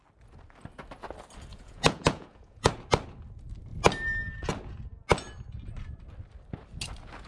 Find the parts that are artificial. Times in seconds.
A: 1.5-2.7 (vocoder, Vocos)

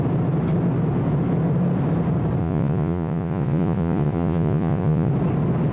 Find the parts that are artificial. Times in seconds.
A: 2.4-5.1 (vocoder, Vocos)

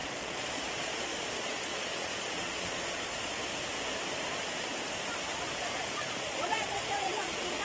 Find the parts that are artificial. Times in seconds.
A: 0.0-3.3 (vocoder, Vocos); 5.8-7.6